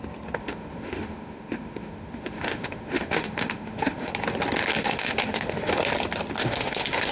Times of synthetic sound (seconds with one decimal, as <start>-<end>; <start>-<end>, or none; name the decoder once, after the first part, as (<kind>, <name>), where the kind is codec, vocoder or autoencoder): 0.4-4.1 (autoencoder, DAC-VAE); 4.8-5.7; 6.4-7.1